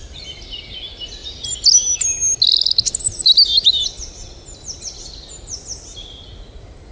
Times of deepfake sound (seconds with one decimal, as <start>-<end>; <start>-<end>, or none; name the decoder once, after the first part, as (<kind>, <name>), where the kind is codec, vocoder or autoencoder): none